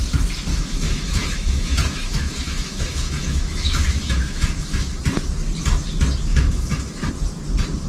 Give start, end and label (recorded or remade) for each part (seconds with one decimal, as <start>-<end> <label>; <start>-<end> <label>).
0.0-0.5 recorded; 0.5-5.0 remade; 5.0-6.3 recorded; 6.3-7.1 remade; 7.1-7.9 recorded